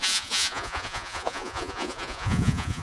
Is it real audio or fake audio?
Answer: fake